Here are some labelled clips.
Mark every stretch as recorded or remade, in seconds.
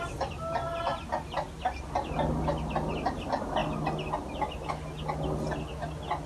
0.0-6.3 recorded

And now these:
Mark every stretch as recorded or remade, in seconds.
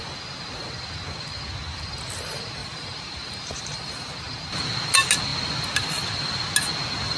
0.0-2.6 recorded; 2.6-3.9 remade; 3.9-7.2 recorded